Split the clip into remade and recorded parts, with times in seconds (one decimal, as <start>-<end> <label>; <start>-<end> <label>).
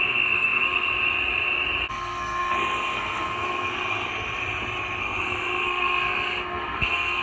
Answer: 0.0-0.9 remade; 0.9-1.9 recorded; 1.9-4.2 remade; 4.2-5.0 recorded; 5.0-7.2 remade